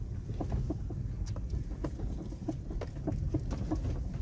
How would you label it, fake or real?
real